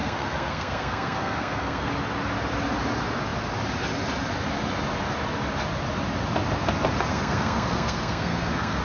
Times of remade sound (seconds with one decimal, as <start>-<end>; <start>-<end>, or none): 0.0-1.9; 7.1-8.8